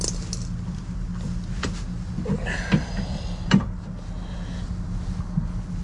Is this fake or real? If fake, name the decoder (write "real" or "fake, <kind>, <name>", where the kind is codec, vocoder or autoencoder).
real